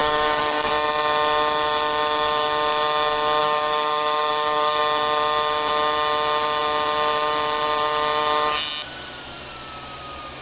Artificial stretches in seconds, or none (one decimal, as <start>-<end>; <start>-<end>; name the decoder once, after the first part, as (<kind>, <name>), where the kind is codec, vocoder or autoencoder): 0.0-0.7 (codec, DAC); 3.4-4.8

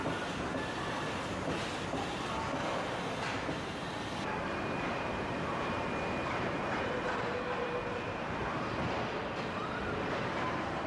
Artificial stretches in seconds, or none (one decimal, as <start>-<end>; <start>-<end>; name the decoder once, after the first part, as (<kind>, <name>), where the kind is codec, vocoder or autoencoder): 3.3-8.5 (vocoder, BigVGAN v2); 9.6-10.9

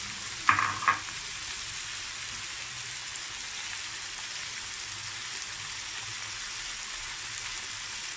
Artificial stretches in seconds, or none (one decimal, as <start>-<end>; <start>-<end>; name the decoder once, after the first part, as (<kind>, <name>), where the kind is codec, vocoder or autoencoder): none

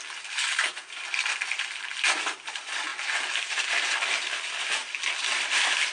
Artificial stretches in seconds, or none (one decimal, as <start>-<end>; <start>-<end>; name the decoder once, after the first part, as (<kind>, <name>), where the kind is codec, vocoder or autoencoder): 0.0-2.9 (vocoder, BigVGAN v2); 3.4-4.8; 5.3-5.9

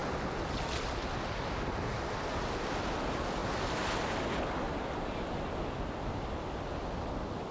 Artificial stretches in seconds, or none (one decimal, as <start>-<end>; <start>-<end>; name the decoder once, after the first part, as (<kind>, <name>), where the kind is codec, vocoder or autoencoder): none

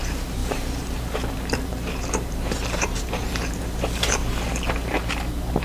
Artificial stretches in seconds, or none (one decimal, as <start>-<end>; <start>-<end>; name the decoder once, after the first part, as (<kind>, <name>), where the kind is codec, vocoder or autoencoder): 0.0-4.2 (vocoder, BigVGAN v2); 4.7-5.6

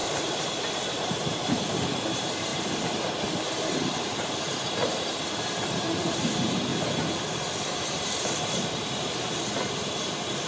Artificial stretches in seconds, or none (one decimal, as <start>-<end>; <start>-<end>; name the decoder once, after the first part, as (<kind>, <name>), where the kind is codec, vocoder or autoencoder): 0.0-6.7 (vocoder, BigVGAN v2); 7.8-10.5

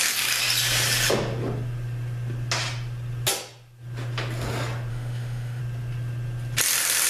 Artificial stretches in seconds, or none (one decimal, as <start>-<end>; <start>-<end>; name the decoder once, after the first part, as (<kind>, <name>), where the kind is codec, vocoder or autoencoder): 4.9-5.6 (autoencoder, DAC-VAE)